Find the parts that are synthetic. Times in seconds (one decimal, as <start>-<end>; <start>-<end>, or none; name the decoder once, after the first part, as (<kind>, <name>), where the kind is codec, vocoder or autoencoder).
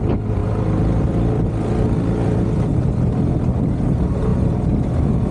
0.4-3.6 (vocoder, BigVGAN v2)